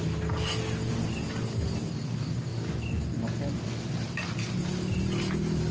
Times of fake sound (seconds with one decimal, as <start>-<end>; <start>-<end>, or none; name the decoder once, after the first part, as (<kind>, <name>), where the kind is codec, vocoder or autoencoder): none